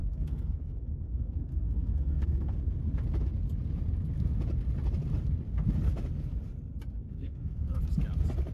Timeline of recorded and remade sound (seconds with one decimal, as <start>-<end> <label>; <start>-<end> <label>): 0.0-2.5 remade; 2.5-7.0 recorded; 7.0-7.8 remade; 7.8-8.5 recorded